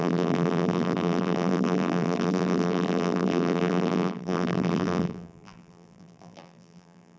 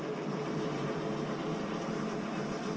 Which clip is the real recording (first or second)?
second